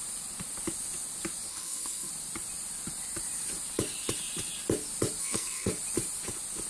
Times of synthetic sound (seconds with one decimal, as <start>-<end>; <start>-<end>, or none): 1.5-2.1; 5.2-5.7